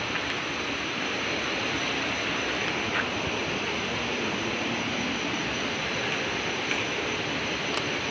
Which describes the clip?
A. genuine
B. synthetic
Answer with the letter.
A